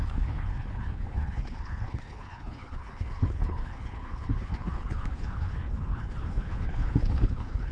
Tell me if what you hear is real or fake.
fake